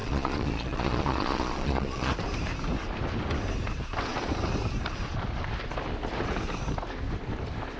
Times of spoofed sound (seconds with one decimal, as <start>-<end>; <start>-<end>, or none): 0.0-2.1